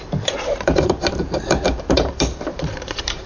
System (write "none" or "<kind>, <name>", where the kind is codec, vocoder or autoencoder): vocoder, BigVGAN v2